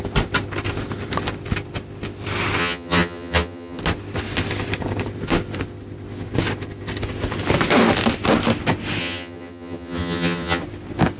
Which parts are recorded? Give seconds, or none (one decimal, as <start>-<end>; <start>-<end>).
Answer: 0.0-2.6; 3.8-9.0; 10.6-11.2